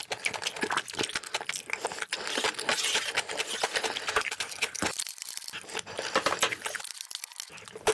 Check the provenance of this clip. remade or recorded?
recorded